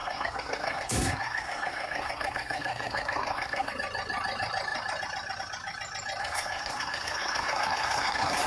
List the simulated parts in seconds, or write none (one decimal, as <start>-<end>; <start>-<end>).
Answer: 0.0-3.7; 6.2-8.5